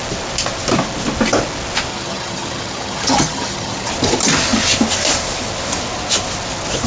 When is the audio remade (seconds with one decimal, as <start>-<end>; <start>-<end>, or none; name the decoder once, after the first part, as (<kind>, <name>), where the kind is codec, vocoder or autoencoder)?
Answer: 1.9-3.9 (vocoder, HiFi-GAN)